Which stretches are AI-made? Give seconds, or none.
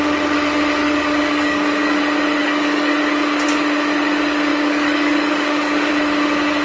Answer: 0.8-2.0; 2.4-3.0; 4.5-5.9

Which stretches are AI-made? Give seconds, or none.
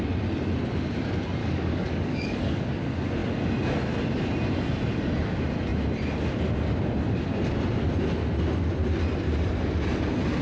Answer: 1.4-2.6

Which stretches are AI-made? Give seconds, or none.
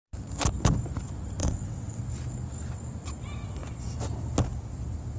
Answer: 1.4-2.0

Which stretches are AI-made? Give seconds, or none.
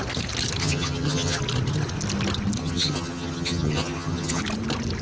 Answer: 0.6-1.4; 2.6-4.4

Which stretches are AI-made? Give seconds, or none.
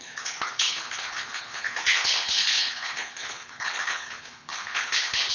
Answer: 0.0-5.3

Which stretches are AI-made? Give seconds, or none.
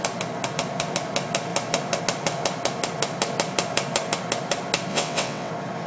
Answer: 4.9-5.5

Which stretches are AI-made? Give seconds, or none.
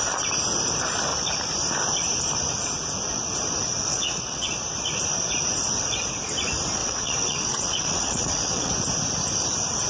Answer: 3.9-4.5; 6.8-8.7